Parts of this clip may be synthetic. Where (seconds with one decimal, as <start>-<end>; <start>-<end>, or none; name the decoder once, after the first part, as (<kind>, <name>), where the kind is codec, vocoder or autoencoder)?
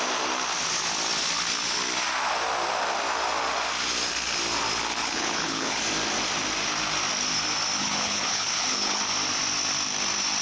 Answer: 5.0-5.8 (codec, HILCodec); 7.8-9.0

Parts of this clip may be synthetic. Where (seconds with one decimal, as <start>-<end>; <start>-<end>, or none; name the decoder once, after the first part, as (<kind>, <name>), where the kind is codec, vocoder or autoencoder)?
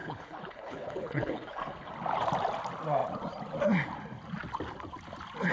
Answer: 0.0-1.9 (codec, HILCodec)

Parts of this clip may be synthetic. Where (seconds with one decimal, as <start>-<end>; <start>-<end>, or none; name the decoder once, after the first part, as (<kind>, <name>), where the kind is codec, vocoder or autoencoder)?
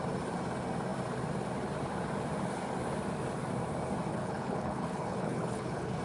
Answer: 4.1-6.0 (codec, HILCodec)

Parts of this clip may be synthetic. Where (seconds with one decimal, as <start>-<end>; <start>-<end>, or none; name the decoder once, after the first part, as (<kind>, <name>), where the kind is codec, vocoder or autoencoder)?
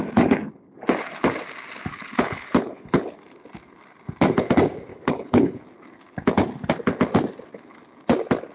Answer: 1.9-3.2 (codec, HILCodec); 4.9-5.6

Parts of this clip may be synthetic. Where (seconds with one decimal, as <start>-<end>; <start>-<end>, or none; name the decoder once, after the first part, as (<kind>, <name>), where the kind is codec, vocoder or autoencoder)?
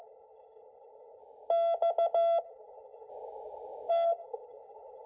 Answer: 0.0-1.2 (codec, HILCodec); 2.4-3.1; 3.9-5.1